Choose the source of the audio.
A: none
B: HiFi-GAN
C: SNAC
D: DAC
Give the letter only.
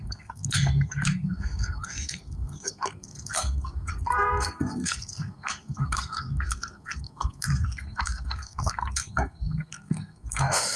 C